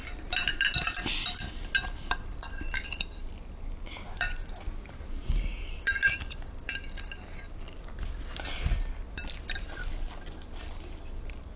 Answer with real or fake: fake